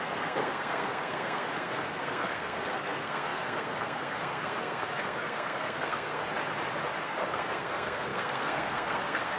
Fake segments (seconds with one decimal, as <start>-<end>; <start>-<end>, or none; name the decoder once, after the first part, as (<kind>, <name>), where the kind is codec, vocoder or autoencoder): 0.0-6.2 (codec, SNAC); 7.0-9.4